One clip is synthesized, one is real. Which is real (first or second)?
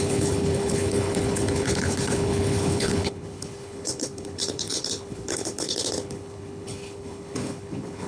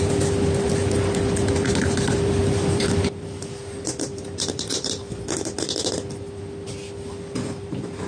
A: second